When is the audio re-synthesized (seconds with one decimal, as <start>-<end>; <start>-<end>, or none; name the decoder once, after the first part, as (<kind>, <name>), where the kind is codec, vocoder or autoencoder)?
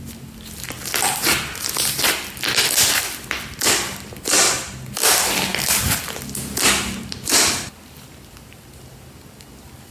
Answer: none